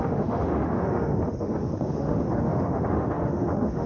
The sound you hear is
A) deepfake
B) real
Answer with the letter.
A